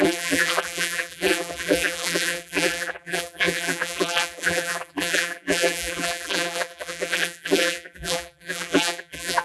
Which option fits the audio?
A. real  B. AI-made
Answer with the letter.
B